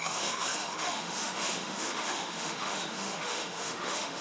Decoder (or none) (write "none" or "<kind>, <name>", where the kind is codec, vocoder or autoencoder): autoencoder, DAC-VAE